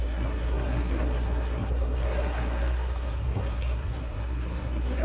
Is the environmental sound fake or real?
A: fake